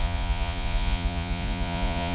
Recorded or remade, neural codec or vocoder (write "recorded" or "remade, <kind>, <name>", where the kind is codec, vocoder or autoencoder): remade, vocoder, Vocos